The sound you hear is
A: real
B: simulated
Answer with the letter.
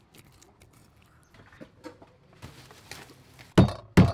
A